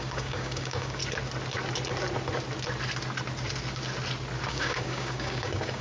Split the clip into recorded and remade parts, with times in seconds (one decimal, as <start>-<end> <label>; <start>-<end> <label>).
0.0-1.0 remade; 1.0-4.5 recorded; 4.5-5.8 remade